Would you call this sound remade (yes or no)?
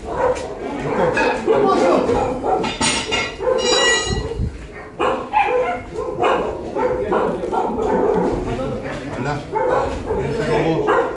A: no